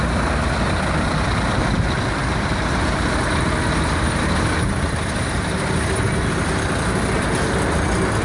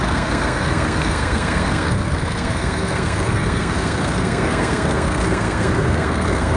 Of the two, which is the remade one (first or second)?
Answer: second